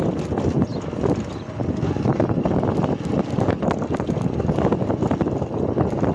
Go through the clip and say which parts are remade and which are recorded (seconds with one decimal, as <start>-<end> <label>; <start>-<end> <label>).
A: 0.0-6.1 recorded